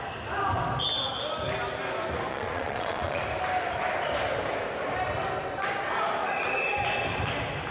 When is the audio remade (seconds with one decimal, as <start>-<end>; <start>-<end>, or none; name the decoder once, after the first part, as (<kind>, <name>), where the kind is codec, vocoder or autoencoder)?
2.3-3.2 (vocoder, Vocos)